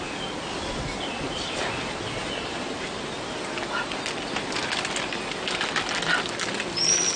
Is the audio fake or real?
real